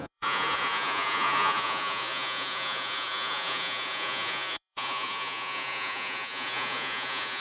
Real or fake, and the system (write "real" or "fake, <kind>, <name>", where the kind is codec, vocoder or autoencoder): fake, vocoder, Vocos